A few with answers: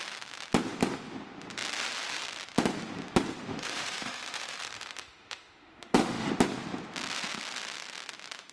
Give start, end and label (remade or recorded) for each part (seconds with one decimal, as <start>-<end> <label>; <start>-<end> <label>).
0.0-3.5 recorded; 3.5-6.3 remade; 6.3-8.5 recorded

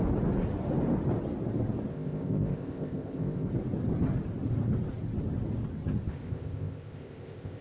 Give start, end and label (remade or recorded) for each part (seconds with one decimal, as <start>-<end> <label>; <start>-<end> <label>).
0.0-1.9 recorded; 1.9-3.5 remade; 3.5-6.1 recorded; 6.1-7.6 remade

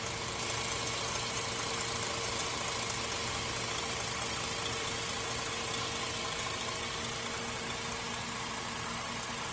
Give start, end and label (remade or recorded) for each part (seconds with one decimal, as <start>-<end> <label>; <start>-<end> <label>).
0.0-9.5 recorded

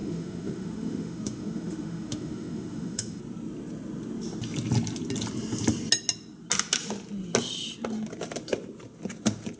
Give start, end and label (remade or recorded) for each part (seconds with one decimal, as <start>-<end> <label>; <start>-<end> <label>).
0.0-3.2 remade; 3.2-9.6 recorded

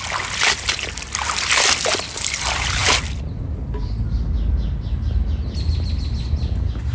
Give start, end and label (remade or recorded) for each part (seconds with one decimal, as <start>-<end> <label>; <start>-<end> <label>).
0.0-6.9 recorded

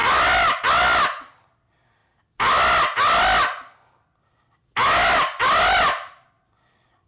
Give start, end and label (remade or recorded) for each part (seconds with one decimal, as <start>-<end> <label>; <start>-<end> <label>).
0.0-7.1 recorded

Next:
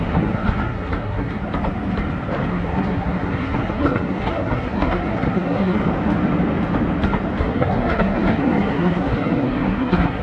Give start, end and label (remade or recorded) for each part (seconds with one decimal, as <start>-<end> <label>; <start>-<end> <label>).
0.0-1.4 remade; 1.4-2.5 recorded; 2.5-5.8 remade; 5.8-7.4 recorded; 7.4-10.2 remade